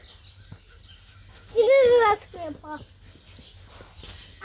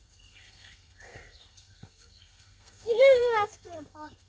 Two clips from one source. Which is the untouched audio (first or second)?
first